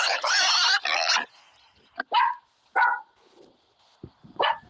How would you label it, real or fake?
real